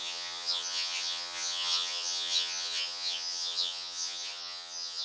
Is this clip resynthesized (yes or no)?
yes